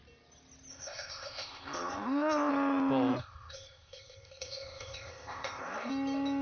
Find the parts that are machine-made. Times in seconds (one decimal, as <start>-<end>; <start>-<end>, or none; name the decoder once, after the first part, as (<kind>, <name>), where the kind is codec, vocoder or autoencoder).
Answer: 0.7-2.5 (codec, ZipCodec); 3.2-5.9